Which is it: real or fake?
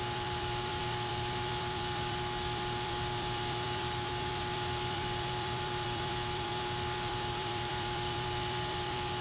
fake